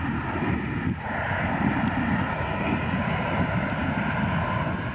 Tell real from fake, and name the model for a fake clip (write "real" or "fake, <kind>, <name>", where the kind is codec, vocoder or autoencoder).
real